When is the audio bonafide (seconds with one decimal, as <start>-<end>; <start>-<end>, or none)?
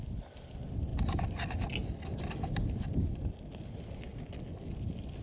0.0-5.2